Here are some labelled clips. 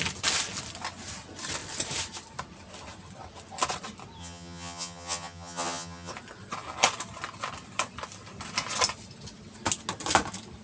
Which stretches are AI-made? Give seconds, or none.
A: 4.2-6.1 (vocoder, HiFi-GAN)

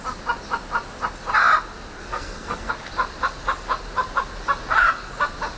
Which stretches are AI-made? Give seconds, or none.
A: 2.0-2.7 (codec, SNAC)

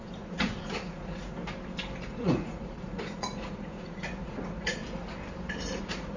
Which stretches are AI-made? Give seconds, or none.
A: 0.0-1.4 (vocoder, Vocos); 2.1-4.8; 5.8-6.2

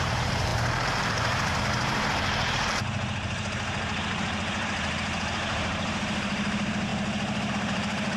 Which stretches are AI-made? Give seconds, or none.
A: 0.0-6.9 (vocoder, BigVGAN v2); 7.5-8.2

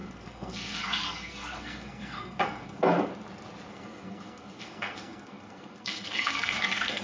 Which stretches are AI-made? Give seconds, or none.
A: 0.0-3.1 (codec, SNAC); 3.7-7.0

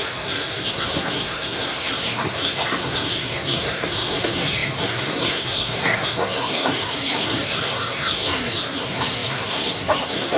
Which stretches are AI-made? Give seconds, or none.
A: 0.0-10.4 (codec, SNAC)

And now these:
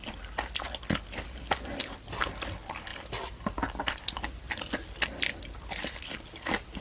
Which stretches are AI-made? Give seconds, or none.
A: none

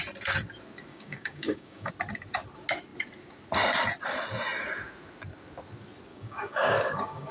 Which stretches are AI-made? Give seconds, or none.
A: 0.9-1.9 (codec, DAC); 6.1-7.3